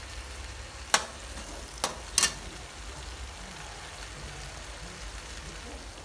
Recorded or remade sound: recorded